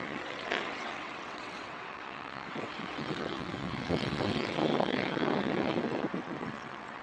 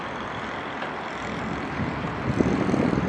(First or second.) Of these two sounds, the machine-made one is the first